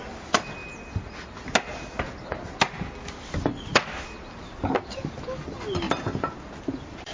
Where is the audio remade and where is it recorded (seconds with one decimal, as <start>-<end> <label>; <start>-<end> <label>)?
0.0-7.1 recorded